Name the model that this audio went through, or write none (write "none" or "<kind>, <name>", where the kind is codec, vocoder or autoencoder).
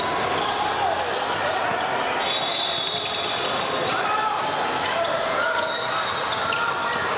none